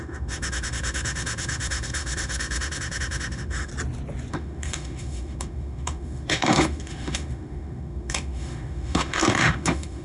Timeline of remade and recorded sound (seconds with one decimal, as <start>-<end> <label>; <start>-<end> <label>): 0.0-3.7 remade; 3.7-4.3 recorded; 4.3-10.0 remade